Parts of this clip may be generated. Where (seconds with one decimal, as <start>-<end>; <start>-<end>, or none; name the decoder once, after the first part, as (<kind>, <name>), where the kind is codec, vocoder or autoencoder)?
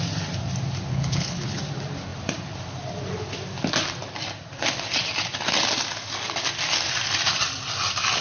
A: 0.9-1.6 (codec, HILCodec)